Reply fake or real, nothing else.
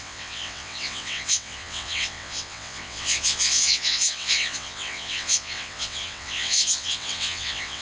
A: fake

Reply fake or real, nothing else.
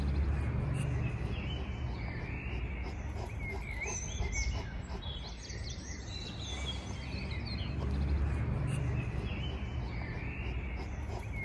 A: real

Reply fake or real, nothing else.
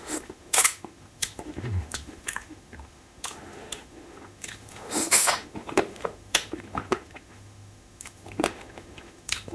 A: fake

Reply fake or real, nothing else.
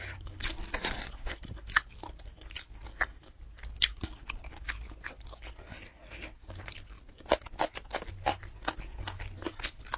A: real